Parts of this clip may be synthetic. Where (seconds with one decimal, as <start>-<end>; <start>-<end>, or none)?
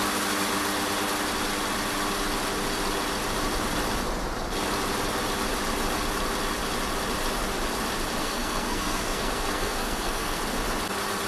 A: 8.2-10.4